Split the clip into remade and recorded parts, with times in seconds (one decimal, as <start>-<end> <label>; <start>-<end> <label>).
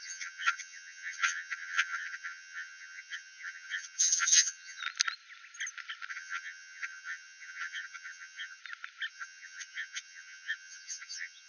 0.0-4.8 remade; 4.8-6.1 recorded; 6.1-8.6 remade; 8.6-9.1 recorded; 9.1-11.5 remade